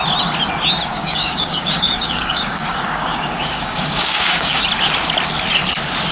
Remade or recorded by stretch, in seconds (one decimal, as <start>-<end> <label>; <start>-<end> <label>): 0.0-0.9 recorded; 0.9-4.6 remade; 4.6-6.1 recorded